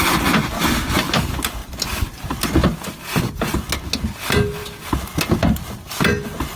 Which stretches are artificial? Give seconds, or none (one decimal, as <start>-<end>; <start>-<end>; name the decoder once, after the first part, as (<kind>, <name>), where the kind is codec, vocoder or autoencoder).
1.6-2.4 (vocoder, BigVGAN v2)